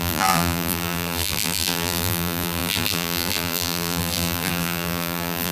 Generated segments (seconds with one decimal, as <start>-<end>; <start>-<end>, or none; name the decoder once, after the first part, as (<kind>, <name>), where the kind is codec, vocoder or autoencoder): 0.0-5.5 (vocoder, BigVGAN v2)